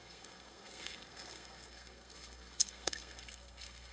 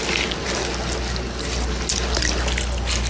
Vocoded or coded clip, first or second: first